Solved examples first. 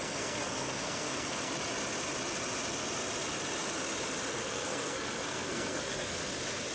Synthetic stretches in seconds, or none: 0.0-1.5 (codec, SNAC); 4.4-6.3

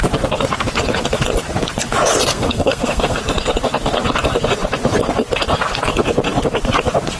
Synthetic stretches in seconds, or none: 2.3-3.2 (codec, SNAC)

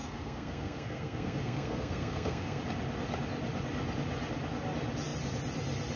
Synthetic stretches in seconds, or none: 0.0-2.6 (codec, SNAC)

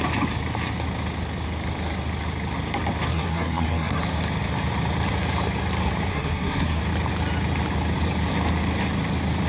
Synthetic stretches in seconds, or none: 3.1-4.0 (codec, SNAC); 6.1-6.8